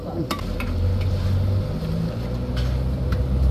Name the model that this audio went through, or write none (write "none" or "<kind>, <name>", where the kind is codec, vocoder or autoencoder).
none